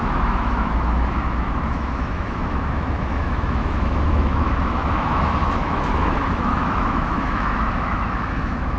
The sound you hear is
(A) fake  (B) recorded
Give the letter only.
A